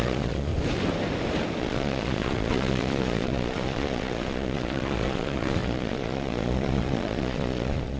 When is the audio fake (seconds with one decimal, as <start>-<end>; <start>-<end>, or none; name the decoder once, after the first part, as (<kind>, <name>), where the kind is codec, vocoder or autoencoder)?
0.0-0.5 (vocoder, Vocos); 1.6-8.0